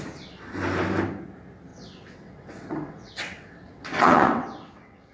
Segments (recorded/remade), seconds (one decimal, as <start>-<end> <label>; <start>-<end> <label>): 0.0-1.7 recorded; 1.7-5.1 remade